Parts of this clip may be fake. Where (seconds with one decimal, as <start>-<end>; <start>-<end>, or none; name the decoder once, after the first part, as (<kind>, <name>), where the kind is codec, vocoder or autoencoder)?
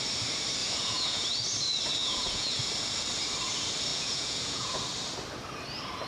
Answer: 0.6-1.2 (vocoder, Vocos); 2.0-2.6; 3.9-4.8